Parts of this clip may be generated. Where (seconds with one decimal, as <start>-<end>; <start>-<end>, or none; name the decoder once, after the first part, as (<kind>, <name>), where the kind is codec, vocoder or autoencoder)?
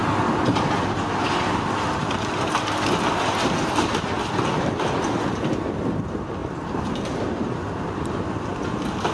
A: none